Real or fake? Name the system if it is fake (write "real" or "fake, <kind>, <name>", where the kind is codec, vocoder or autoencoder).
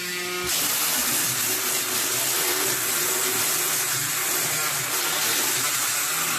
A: real